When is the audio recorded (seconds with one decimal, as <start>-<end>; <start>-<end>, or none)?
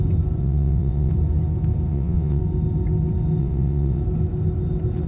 0.0-0.4; 1.1-1.9; 2.4-3.4; 4.0-5.1